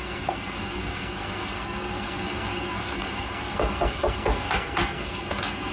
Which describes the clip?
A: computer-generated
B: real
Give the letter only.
A